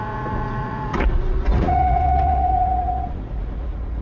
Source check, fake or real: fake